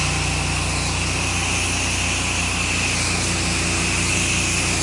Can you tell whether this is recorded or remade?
recorded